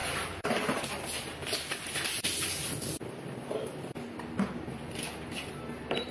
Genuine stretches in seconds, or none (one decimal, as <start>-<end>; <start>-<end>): 0.8-6.1